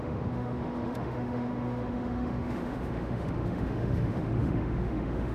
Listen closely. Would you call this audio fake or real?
fake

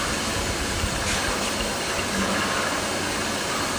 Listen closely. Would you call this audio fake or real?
real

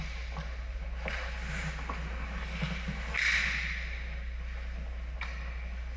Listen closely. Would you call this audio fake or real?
real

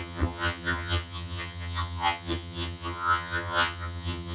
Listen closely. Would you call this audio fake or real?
fake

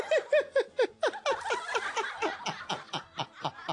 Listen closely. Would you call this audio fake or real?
real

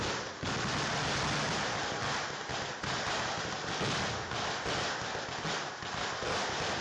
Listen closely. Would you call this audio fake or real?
real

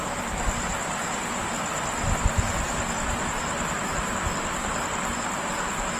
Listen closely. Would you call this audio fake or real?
real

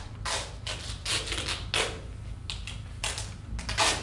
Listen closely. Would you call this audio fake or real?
real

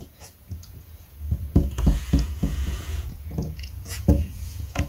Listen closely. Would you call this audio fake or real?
fake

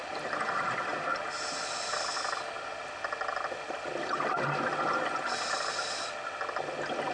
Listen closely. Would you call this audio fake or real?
real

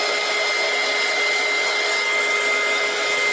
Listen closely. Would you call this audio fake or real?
real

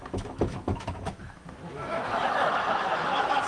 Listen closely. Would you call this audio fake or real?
fake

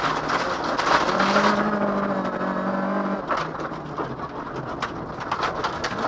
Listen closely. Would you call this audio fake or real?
real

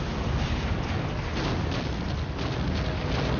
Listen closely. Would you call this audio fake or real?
real